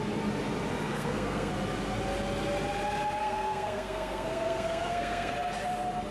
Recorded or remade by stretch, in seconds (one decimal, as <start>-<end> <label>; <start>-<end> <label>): 0.0-0.9 recorded; 0.9-1.5 remade; 1.5-3.2 recorded; 3.2-5.3 remade; 5.3-6.1 recorded

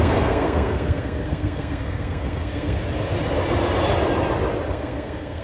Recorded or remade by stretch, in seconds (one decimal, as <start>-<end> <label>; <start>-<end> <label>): 0.0-2.8 remade; 2.8-4.7 recorded; 4.7-5.4 remade

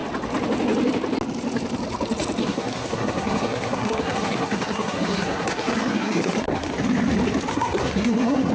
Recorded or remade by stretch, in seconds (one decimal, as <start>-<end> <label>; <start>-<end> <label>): 0.0-2.4 recorded; 2.4-6.7 remade; 6.7-7.5 recorded; 7.5-8.5 remade

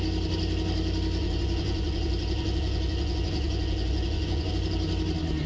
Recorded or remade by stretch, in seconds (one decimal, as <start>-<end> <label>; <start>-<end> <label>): 0.0-1.2 recorded; 1.2-4.5 remade; 4.5-5.5 recorded

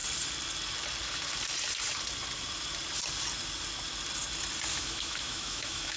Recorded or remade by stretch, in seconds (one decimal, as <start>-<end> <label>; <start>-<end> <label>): 0.0-4.7 recorded; 4.7-6.0 remade

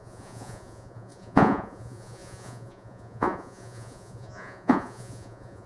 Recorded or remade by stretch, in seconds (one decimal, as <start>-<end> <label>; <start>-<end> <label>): 0.0-5.7 remade

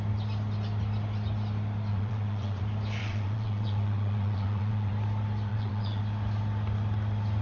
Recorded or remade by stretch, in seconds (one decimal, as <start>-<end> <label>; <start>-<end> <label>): 0.0-1.9 recorded; 1.9-2.6 remade; 2.6-3.0 recorded; 3.0-4.9 remade; 4.9-5.5 recorded; 5.5-6.0 remade; 6.0-7.4 recorded